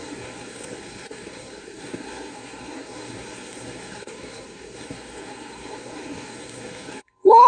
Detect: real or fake fake